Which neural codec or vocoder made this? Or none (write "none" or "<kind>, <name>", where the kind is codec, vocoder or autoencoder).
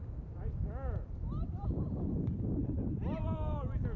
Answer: none